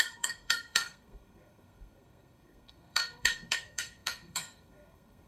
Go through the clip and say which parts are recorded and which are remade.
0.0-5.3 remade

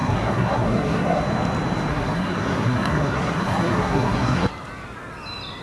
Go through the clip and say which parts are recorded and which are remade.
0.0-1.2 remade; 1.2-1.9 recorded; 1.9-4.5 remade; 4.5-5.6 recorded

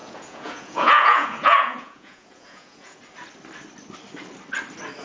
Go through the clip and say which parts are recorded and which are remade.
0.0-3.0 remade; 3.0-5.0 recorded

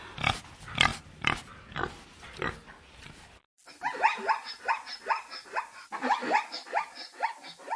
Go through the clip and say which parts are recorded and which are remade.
0.0-7.8 recorded